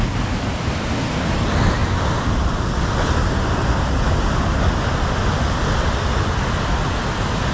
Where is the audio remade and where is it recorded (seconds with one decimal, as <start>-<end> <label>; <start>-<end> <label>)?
0.0-7.5 recorded

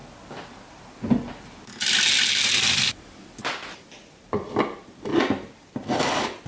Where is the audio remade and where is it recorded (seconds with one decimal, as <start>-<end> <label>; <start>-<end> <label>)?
0.0-5.1 recorded; 5.1-5.7 remade; 5.7-6.5 recorded

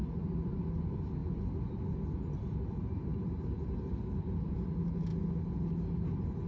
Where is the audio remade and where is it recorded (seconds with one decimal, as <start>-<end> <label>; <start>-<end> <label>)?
0.0-6.5 recorded